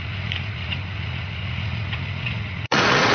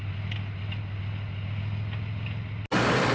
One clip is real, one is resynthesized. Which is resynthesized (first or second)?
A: first